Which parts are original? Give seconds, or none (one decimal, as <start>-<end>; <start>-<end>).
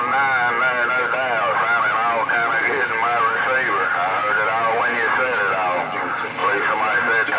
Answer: 0.0-7.4